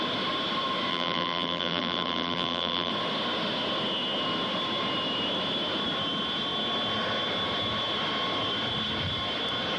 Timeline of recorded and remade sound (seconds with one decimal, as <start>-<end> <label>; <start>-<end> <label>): 0.0-0.9 recorded; 0.9-2.9 remade; 2.9-9.8 recorded